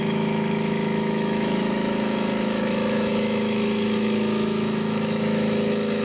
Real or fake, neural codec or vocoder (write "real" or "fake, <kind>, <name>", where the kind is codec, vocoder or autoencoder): fake, autoencoder, DAC-VAE